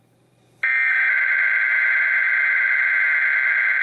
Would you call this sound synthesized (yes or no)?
yes